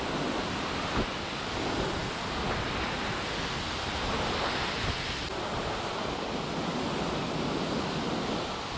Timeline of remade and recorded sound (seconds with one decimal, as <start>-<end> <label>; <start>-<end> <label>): 0.0-8.8 recorded

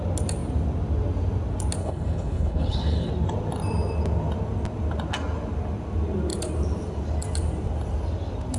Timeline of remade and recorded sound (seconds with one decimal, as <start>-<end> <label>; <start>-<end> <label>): 0.0-1.8 recorded; 1.8-3.1 remade; 3.1-8.6 recorded

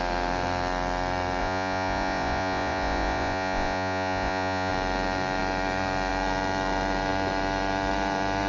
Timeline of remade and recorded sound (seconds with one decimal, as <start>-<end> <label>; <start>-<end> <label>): 0.0-1.4 recorded; 1.4-4.7 remade; 4.7-8.5 recorded

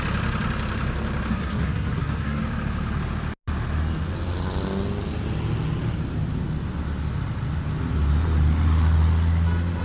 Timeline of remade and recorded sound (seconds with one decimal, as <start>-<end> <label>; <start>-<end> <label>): 0.0-1.3 recorded; 1.3-2.4 remade; 2.4-9.8 recorded

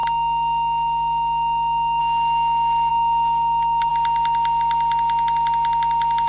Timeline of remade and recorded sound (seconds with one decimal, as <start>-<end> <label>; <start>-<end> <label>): 0.0-2.0 remade; 2.0-2.9 recorded; 2.9-3.9 remade; 3.9-6.3 recorded

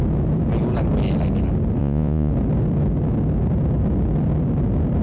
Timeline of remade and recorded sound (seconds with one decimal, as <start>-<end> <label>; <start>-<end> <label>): 0.0-1.8 recorded; 1.8-2.3 remade; 2.3-5.0 recorded